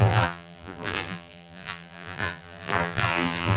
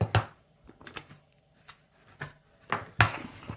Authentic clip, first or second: second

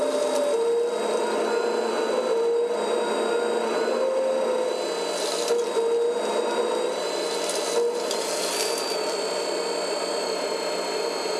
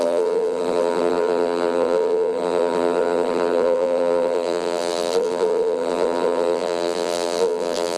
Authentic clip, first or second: first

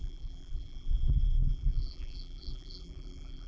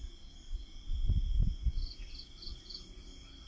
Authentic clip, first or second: second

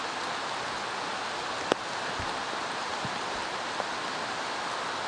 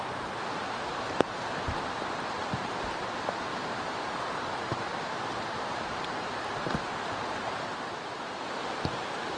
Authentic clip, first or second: first